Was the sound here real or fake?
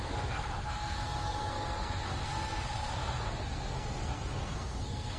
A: fake